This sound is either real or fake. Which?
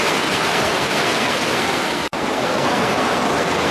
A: fake